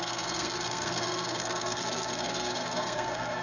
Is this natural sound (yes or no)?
no